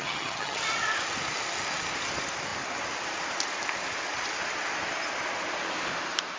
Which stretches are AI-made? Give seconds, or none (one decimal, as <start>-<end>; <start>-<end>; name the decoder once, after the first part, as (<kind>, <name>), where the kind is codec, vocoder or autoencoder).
0.0-0.6 (vocoder, HiFi-GAN)